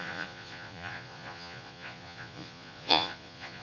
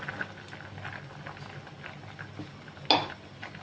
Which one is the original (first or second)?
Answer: second